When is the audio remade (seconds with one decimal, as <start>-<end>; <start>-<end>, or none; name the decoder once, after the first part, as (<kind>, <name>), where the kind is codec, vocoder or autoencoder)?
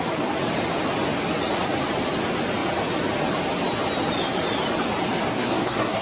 5.3-6.0 (codec, SNAC)